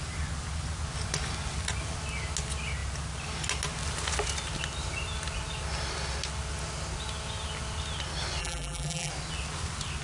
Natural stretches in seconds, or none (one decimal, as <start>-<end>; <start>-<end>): 0.0-8.4; 9.1-10.0